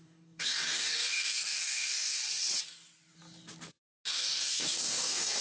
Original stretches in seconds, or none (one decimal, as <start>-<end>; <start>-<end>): 2.2-4.1